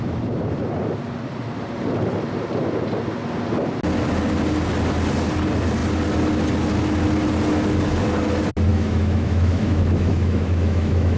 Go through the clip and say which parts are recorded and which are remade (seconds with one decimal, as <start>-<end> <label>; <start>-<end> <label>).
0.0-8.7 recorded; 8.7-11.2 remade